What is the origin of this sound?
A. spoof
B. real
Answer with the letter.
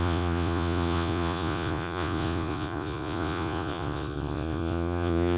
A